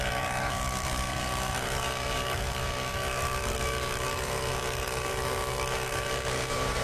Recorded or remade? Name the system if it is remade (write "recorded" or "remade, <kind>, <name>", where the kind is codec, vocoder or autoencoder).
remade, codec, DAC